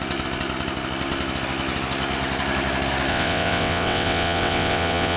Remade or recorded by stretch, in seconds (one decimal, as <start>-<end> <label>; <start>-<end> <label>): 0.0-3.1 recorded; 3.1-5.2 remade